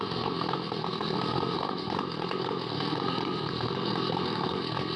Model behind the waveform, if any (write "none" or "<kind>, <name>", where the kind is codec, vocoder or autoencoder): codec, SNAC